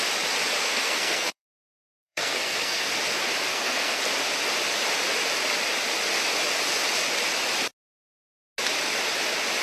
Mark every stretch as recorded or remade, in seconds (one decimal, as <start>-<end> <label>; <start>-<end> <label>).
0.0-0.6 recorded; 0.6-2.9 remade; 2.9-3.5 recorded; 3.5-4.0 remade; 4.0-9.6 recorded